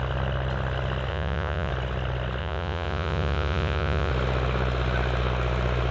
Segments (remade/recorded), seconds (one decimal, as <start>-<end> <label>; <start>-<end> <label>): 0.0-1.1 recorded; 1.1-1.7 remade; 1.7-2.4 recorded; 2.4-4.1 remade; 4.1-5.9 recorded